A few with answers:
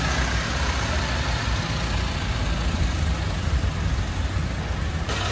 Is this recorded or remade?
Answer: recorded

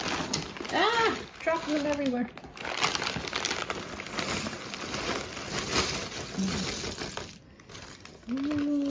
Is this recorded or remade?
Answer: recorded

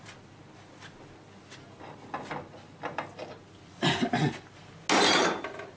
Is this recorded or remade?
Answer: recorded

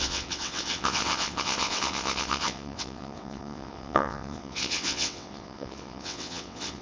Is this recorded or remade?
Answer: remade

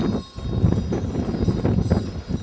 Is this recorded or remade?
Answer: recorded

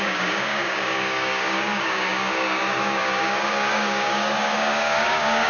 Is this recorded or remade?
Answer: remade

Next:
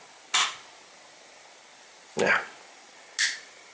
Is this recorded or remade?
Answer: recorded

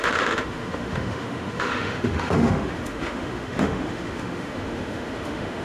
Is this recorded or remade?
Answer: remade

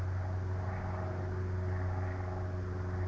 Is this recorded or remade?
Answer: recorded